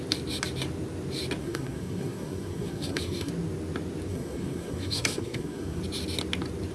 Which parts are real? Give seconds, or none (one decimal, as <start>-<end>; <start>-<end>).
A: 0.0-1.4; 3.3-4.1; 5.8-6.7